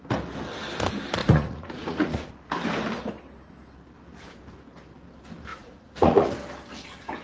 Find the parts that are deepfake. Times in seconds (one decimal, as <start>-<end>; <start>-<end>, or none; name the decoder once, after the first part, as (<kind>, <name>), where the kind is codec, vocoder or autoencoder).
1.2-2.3 (vocoder, Vocos); 5.5-6.3